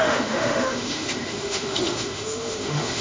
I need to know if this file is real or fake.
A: fake